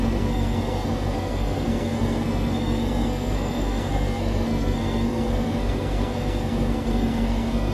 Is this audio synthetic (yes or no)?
yes